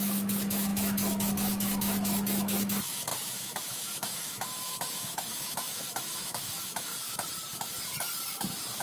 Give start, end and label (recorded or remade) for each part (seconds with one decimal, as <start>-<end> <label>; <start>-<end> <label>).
0.0-6.9 remade; 6.9-8.8 recorded